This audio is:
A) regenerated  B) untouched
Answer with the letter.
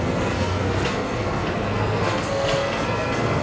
A